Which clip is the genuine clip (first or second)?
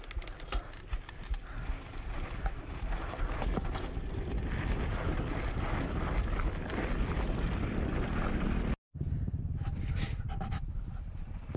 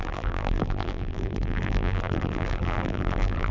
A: first